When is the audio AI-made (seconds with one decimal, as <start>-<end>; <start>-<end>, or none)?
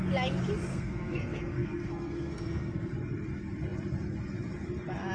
0.7-2.9